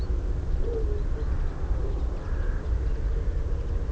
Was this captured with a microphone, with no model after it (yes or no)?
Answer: yes